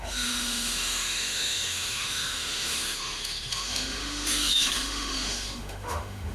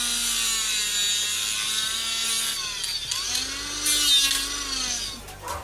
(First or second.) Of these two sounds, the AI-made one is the first